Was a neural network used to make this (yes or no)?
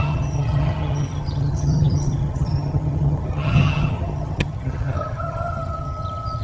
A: yes